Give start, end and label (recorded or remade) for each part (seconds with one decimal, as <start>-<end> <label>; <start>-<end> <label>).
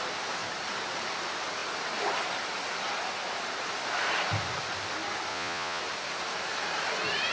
0.0-5.3 recorded; 5.3-5.8 remade; 5.8-7.3 recorded